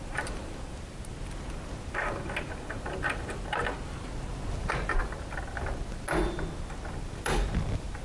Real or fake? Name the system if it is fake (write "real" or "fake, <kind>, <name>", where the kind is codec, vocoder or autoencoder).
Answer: real